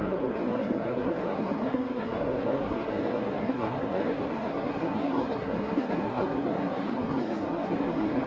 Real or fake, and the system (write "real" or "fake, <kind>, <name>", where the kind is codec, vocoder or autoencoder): fake, codec, SNAC